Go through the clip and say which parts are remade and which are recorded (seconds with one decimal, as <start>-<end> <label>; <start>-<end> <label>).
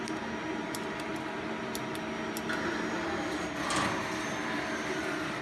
0.0-5.4 recorded